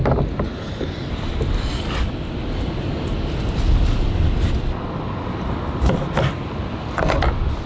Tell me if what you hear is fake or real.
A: real